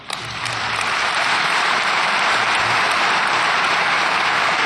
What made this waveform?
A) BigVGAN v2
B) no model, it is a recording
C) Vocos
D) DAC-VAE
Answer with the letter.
A